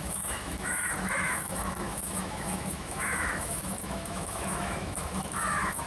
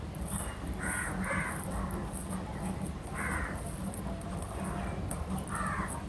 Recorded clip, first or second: second